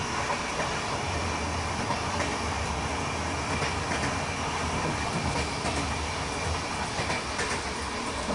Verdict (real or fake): real